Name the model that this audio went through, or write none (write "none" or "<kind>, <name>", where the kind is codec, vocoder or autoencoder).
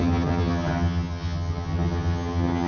vocoder, HiFi-GAN